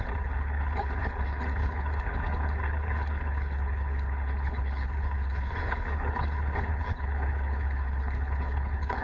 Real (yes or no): no